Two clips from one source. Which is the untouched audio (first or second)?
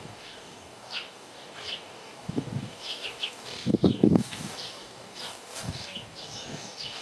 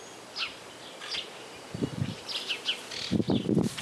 second